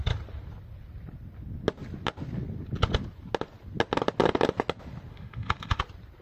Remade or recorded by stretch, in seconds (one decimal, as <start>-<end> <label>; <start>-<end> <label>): 0.0-5.1 recorded; 5.1-5.8 remade; 5.8-6.2 recorded